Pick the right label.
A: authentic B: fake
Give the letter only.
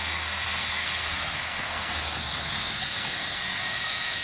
B